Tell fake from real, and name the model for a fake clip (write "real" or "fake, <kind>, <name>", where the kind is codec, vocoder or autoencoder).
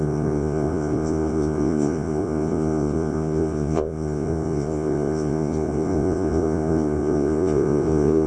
fake, vocoder, Vocos